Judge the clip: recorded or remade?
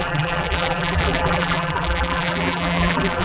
remade